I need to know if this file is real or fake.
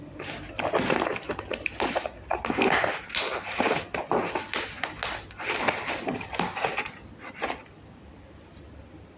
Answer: real